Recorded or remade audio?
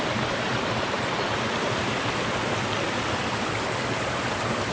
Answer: recorded